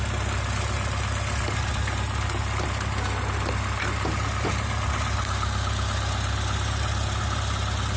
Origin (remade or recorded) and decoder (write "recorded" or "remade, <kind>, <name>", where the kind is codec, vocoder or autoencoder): recorded